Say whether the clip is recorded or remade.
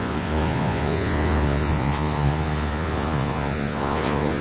remade